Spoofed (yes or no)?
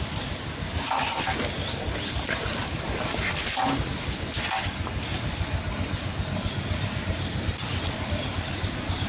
no